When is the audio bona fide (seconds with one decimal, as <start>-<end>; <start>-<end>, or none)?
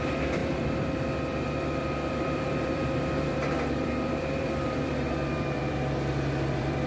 none